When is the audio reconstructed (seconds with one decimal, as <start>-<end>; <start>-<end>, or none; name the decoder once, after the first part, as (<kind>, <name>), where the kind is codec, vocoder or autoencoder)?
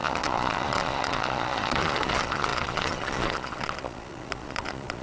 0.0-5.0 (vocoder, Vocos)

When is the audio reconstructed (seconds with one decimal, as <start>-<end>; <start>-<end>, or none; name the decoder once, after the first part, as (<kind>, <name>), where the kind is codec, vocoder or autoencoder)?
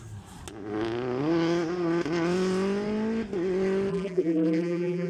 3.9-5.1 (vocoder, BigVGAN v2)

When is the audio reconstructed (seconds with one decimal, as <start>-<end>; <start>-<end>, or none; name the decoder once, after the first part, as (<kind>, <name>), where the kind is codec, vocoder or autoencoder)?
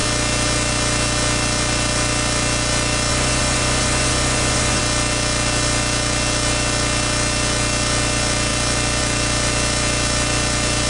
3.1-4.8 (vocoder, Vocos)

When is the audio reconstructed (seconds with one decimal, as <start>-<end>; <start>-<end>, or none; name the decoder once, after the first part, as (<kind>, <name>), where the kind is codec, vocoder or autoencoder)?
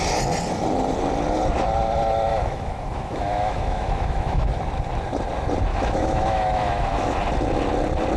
2.3-4.5 (autoencoder, DAC-VAE); 5.7-7.2